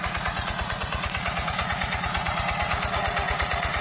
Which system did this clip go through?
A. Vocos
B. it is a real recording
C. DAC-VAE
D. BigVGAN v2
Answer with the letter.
A